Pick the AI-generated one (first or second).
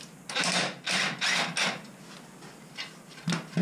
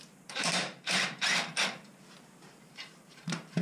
second